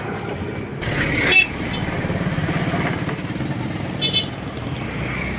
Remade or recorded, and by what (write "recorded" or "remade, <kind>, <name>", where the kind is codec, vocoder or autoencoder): recorded